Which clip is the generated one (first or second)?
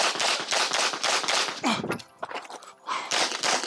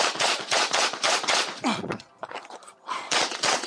second